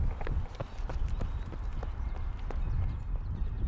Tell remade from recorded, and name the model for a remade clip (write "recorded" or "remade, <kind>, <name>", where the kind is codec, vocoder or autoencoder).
remade, vocoder, BigVGAN v2